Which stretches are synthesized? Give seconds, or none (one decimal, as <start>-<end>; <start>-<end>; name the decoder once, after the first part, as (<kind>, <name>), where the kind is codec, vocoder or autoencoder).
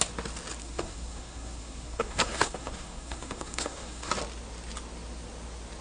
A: 0.6-4.1 (codec, SNAC)